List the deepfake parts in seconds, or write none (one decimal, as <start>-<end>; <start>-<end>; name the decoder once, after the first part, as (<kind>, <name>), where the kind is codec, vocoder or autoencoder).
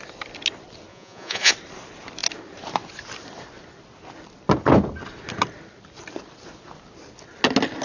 0.9-1.5 (vocoder, Vocos)